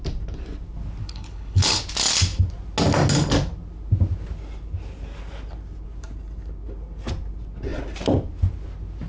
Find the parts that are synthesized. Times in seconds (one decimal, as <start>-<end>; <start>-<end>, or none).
1.0-1.8